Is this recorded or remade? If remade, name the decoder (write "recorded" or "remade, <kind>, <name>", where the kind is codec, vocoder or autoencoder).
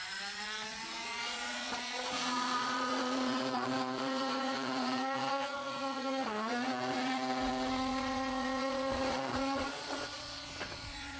remade, vocoder, Vocos